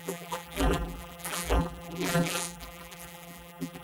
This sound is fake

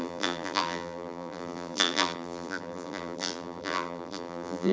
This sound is fake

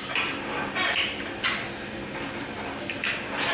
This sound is fake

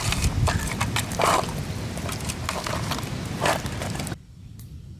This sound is fake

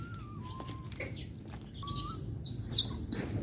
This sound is real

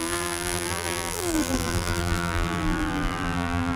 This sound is fake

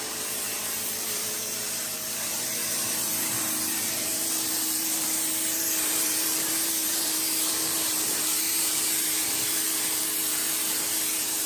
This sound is fake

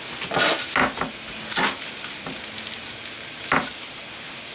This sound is real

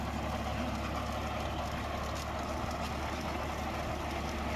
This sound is real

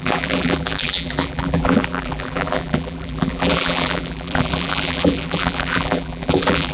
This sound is fake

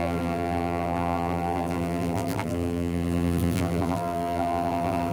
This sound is fake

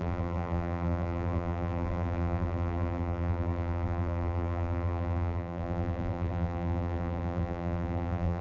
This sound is fake